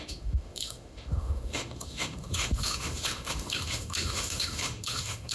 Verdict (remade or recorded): remade